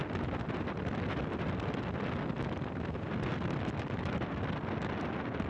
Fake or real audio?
real